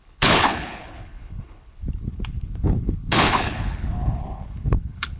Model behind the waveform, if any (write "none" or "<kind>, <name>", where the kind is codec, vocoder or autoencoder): codec, HILCodec